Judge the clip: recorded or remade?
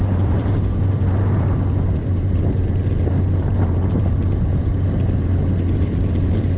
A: remade